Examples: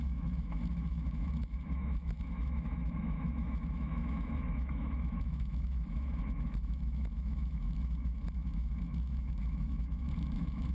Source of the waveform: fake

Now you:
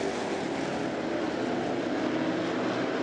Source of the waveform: real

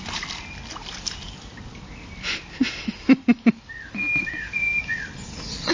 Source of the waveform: real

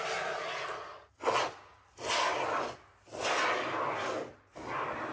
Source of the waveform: real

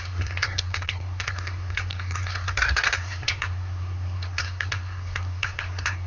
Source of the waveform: fake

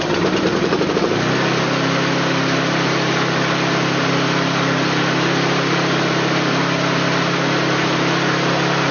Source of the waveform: real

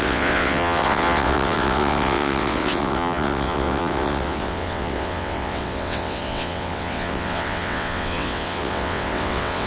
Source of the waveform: fake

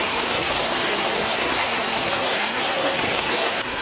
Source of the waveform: fake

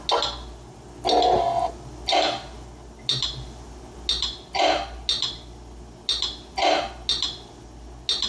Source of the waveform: real